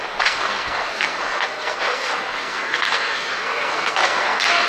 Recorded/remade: remade